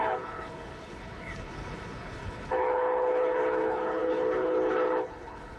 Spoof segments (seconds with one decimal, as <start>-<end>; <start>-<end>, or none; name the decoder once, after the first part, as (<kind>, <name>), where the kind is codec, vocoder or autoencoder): 0.0-5.6 (codec, HILCodec)